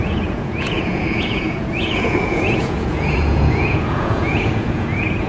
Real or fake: fake